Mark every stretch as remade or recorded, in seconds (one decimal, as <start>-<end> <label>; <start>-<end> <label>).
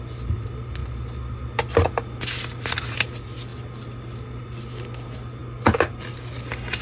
0.0-6.8 recorded